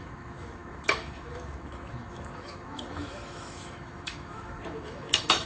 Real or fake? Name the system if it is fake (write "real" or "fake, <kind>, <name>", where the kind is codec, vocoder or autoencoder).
fake, autoencoder, DAC-VAE